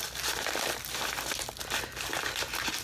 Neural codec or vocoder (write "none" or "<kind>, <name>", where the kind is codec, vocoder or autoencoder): none